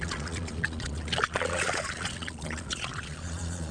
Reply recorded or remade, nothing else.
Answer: remade